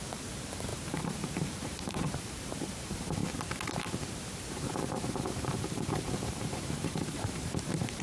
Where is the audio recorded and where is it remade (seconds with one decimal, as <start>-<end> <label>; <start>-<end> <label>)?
0.0-3.2 remade; 3.2-4.3 recorded; 4.3-8.0 remade

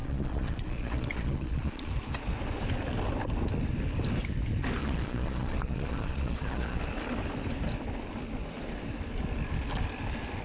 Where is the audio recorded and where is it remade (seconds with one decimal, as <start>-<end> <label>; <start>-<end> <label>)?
0.0-1.9 remade; 1.9-4.8 recorded; 4.8-6.8 remade; 6.8-10.4 recorded

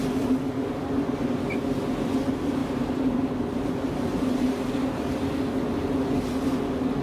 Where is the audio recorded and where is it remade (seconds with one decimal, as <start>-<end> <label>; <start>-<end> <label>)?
0.0-2.6 recorded; 2.6-5.1 remade; 5.1-7.0 recorded

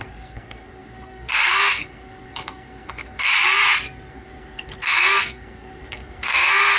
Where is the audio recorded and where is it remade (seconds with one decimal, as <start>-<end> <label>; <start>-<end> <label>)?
0.0-3.3 remade; 3.3-4.1 recorded; 4.1-6.8 remade

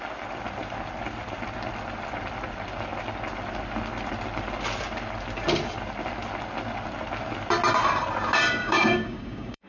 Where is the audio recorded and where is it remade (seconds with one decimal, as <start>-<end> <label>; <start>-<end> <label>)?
0.0-8.6 recorded; 8.6-9.7 remade

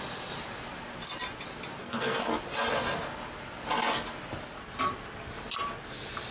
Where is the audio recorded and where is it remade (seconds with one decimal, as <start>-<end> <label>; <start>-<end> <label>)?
0.0-1.8 recorded; 1.8-2.3 remade; 2.3-6.3 recorded

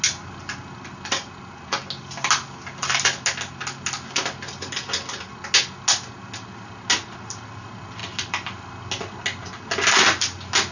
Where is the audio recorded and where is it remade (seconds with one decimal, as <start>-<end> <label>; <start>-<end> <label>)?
0.0-10.7 recorded

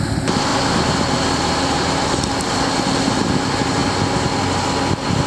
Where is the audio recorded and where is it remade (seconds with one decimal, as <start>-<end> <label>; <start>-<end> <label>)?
0.0-5.3 recorded